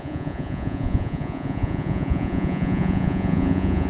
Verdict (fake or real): fake